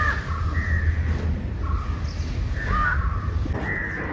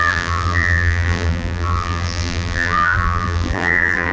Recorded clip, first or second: first